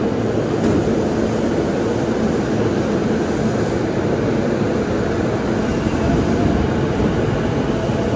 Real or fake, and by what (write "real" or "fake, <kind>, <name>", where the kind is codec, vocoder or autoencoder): real